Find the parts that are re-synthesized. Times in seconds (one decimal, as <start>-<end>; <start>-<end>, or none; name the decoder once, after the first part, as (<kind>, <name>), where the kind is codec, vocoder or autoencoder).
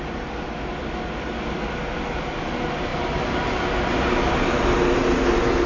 none